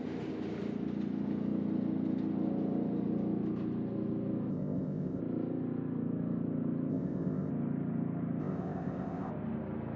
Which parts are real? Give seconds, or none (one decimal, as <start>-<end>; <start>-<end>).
0.0-4.5; 5.2-6.9; 7.5-8.4; 9.3-10.0